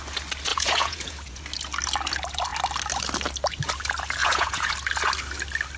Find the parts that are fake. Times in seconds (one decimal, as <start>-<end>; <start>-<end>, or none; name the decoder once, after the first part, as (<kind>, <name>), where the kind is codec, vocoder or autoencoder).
0.5-1.4 (vocoder, Vocos); 4.2-4.7

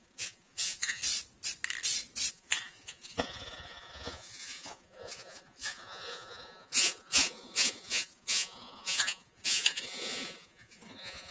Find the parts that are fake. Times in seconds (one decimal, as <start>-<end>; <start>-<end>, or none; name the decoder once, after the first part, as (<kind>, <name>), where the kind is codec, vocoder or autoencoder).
0.0-1.0 (vocoder, Vocos); 2.3-11.3